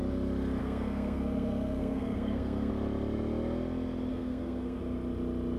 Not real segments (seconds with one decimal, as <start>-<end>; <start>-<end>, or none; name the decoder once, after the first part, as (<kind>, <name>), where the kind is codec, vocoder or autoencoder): 0.6-2.7 (codec, SNAC); 4.1-4.8